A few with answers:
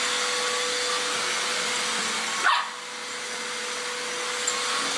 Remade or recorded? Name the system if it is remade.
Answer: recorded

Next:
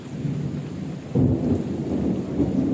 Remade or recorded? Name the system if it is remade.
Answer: recorded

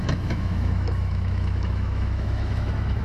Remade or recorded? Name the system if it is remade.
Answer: remade, autoencoder, DAC-VAE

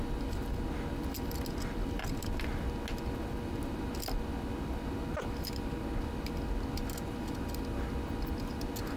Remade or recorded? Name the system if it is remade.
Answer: recorded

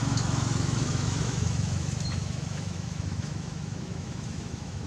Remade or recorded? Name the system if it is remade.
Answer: remade, autoencoder, DAC-VAE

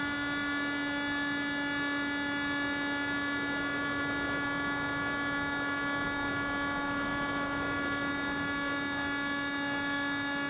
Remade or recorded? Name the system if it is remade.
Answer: recorded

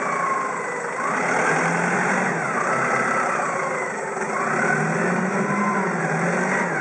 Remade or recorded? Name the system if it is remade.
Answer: recorded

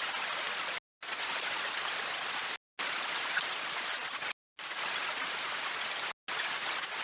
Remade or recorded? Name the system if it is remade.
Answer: recorded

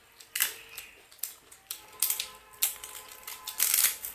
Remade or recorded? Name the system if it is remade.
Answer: recorded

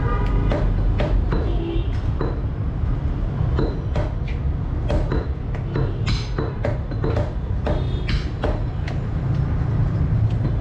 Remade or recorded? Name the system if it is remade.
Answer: recorded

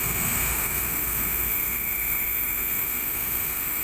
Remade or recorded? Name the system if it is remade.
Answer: remade, autoencoder, DAC-VAE